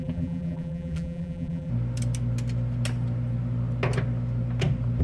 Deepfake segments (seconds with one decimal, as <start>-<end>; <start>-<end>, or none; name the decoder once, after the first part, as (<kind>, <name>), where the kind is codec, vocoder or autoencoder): 0.0-1.7 (vocoder, BigVGAN v2)